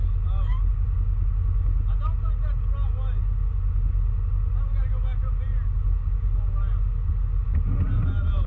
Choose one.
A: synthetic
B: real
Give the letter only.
B